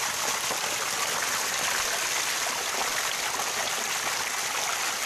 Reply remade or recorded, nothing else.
recorded